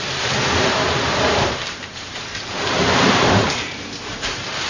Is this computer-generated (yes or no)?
yes